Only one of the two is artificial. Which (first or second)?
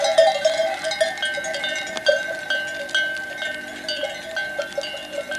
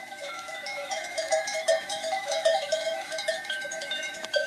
second